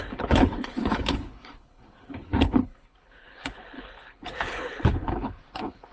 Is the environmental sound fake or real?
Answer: fake